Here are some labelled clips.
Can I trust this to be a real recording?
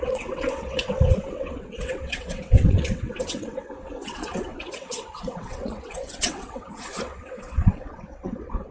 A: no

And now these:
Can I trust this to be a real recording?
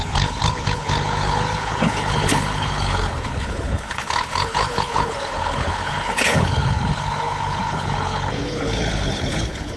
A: no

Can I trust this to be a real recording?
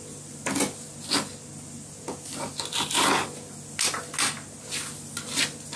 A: yes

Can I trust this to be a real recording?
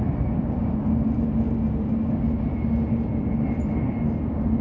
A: yes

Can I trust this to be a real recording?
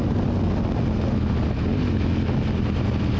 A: yes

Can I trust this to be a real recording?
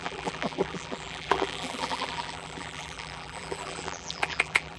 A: no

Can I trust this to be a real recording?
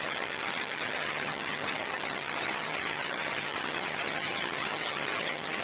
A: no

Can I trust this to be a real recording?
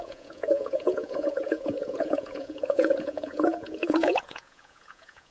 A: no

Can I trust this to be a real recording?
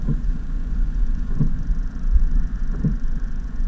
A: no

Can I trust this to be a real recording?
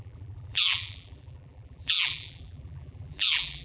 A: no